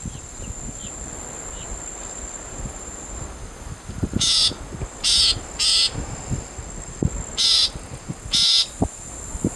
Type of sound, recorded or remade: recorded